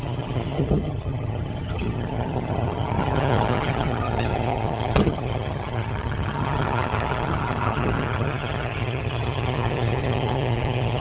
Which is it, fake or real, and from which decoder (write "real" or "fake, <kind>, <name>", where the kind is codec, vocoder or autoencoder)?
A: fake, vocoder, HiFi-GAN